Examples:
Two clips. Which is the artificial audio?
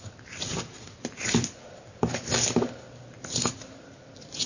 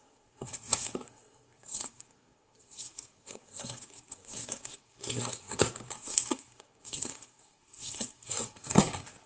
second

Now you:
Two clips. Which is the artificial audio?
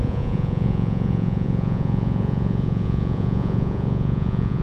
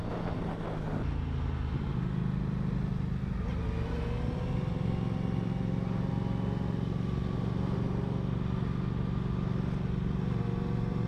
first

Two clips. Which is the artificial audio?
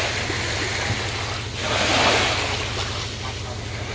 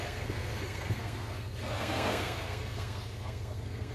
second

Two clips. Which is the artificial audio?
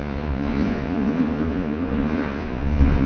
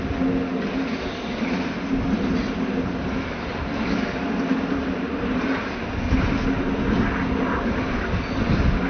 first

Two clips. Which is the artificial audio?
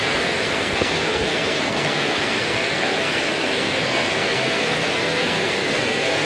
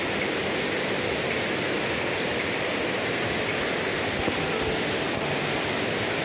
first